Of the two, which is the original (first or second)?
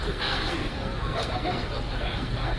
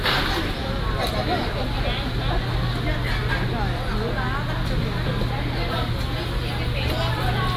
second